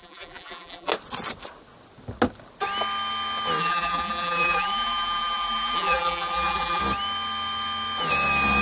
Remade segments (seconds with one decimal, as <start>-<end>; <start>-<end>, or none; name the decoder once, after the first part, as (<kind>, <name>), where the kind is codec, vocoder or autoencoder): 0.0-0.9 (vocoder, BigVGAN v2); 3.6-6.8